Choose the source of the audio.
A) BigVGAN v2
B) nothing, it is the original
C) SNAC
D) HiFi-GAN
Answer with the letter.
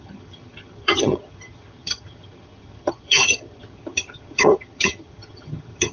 D